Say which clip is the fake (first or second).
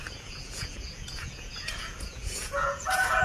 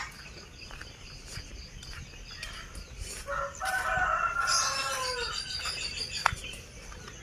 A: first